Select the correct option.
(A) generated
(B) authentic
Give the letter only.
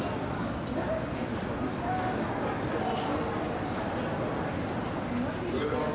B